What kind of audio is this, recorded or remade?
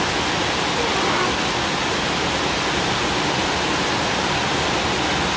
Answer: recorded